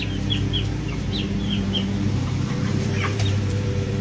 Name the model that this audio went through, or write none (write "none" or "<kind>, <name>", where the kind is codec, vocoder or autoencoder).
vocoder, BigVGAN v2